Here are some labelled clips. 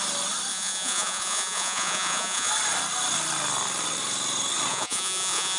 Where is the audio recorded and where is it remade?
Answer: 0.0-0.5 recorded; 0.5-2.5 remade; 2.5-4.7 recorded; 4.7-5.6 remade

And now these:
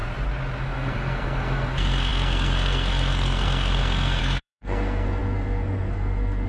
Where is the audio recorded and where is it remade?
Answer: 0.0-0.6 recorded; 0.6-6.5 remade

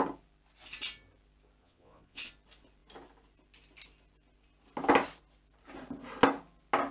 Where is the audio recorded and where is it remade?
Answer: 0.0-1.6 recorded; 1.6-2.3 remade; 2.3-6.9 recorded